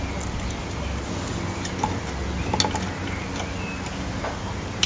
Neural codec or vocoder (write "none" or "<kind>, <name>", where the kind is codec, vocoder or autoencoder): none